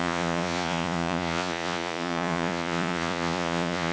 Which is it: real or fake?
fake